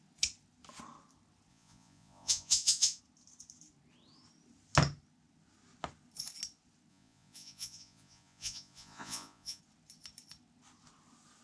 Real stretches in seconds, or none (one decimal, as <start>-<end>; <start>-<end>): 0.0-1.5; 3.0-6.9; 9.6-11.4

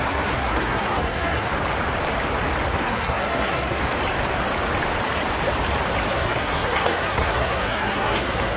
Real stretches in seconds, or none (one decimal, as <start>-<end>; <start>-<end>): 1.5-2.7; 3.8-6.1

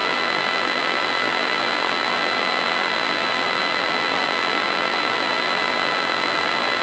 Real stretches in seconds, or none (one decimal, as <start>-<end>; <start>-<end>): none

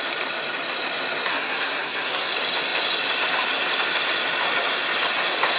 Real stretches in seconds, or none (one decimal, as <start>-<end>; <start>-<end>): 0.0-1.3; 2.3-5.6

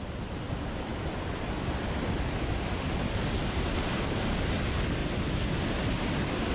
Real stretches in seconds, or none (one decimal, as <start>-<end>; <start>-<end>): 5.0-5.7